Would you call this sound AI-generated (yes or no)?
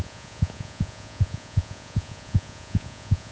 yes